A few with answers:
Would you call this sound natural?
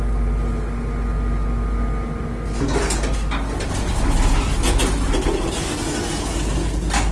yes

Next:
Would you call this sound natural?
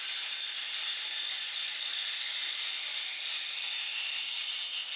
yes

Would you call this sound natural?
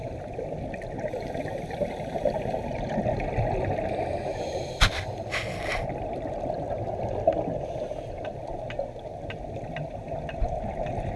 yes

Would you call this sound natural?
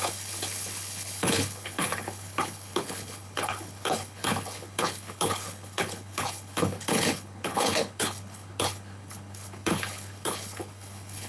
no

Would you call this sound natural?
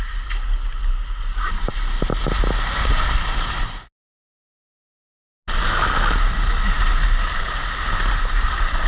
yes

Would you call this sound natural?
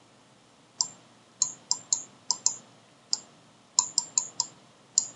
yes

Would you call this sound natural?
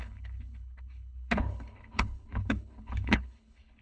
no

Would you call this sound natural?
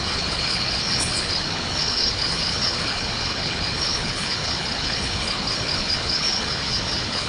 no